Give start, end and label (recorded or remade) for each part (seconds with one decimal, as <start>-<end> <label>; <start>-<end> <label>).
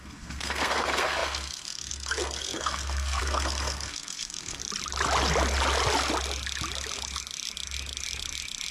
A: 0.0-4.6 remade; 4.6-8.7 recorded